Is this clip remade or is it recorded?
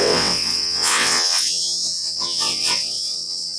remade